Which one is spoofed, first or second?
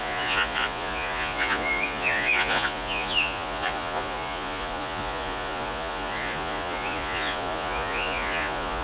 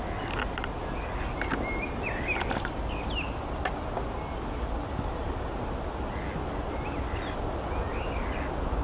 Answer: first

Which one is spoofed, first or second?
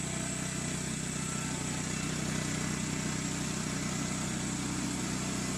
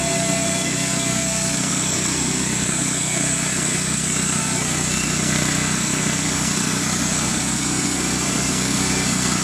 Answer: second